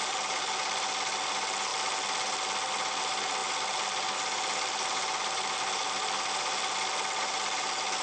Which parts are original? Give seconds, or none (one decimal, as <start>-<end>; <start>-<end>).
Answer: 0.0-8.0